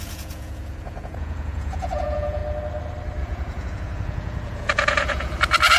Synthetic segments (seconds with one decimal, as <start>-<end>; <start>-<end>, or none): 0.0-2.4; 3.2-5.8